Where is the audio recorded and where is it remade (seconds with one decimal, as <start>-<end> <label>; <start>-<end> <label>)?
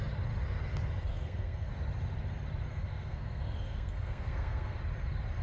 0.0-1.1 recorded; 1.1-1.7 remade; 1.7-2.7 recorded; 2.7-4.8 remade; 4.8-5.4 recorded